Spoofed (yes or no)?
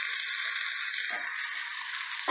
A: no